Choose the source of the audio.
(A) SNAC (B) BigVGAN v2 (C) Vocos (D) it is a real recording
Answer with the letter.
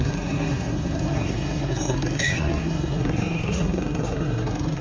A